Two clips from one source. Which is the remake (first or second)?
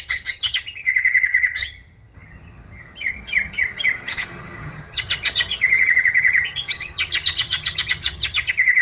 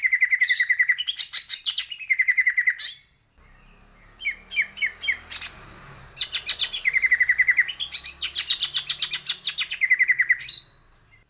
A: first